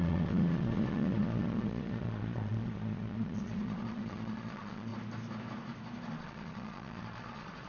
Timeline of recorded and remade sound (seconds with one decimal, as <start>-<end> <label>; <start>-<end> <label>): 0.0-4.9 remade; 4.9-6.1 recorded; 6.1-7.7 remade